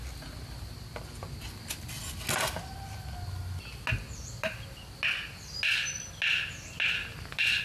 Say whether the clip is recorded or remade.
recorded